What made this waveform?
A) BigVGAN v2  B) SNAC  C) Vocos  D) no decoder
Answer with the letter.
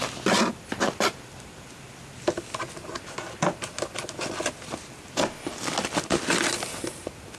D